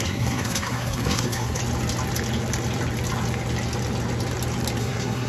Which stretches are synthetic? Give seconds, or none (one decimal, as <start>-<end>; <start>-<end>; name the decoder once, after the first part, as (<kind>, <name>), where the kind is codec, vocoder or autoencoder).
0.0-1.6 (codec, SNAC); 4.8-5.3